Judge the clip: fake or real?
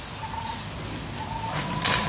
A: real